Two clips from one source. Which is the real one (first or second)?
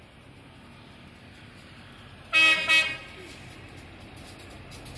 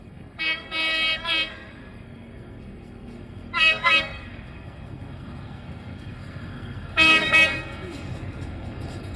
first